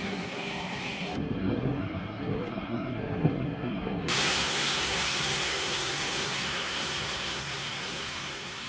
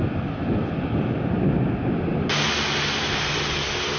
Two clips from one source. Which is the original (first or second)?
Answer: second